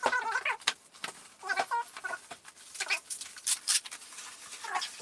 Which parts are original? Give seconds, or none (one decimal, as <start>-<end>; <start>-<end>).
0.0-5.0